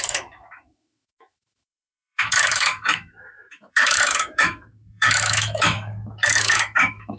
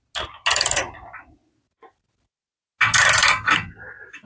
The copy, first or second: first